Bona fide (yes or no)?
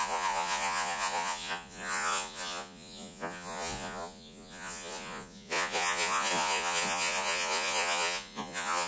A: no